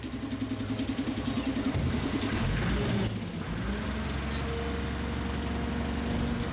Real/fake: real